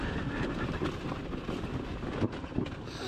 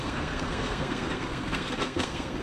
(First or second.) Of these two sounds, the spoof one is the second